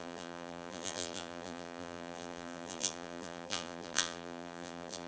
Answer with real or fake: fake